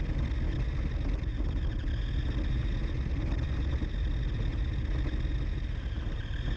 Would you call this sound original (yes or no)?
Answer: yes